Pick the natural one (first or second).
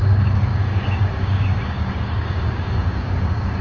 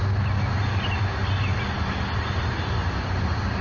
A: second